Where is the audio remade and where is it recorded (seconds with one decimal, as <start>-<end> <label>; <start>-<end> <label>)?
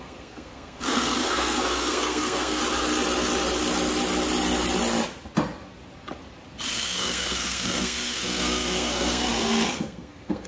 0.0-2.6 remade; 2.6-6.7 recorded; 6.7-10.5 remade